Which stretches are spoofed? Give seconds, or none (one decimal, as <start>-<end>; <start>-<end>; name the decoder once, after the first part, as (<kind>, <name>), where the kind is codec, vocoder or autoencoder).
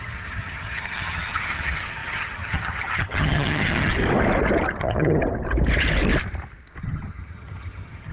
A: 0.0-3.9 (vocoder, HiFi-GAN); 4.8-5.2; 6.8-8.1